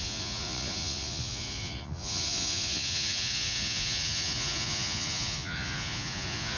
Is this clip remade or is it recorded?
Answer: remade